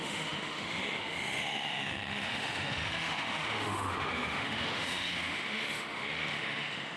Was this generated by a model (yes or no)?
yes